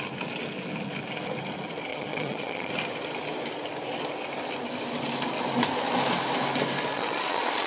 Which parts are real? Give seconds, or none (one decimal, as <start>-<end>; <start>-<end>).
0.0-1.9; 2.7-6.9